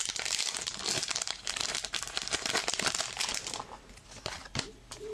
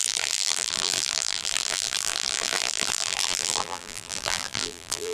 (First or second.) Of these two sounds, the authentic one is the first